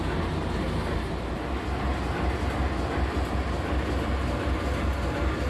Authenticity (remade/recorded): recorded